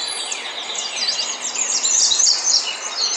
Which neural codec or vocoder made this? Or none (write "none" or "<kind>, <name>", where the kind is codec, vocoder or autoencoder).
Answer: none